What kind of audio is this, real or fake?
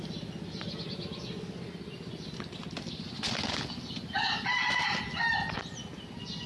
real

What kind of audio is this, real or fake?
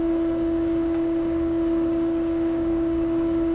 fake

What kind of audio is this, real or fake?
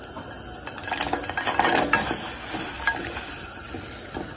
real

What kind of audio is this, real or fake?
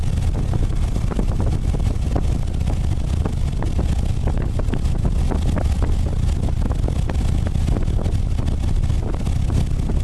real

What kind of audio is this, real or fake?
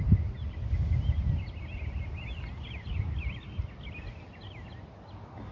real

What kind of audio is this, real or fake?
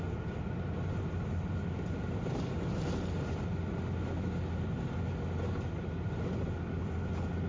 real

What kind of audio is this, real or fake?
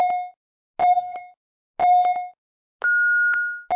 real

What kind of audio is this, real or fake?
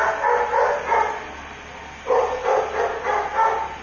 real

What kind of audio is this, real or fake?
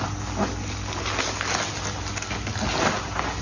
real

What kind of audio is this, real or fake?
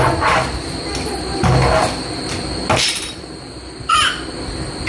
real